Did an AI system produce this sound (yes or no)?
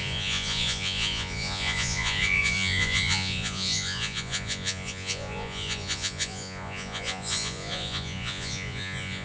yes